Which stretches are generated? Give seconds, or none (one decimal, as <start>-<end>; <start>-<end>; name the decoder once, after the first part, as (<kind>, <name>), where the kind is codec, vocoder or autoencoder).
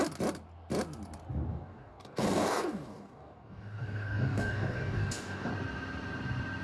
1.5-5.5 (codec, DAC)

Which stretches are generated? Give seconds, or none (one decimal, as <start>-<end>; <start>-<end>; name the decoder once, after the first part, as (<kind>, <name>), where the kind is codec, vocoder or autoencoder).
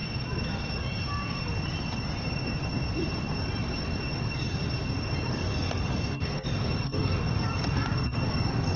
4.0-4.6 (codec, DAC); 5.3-8.8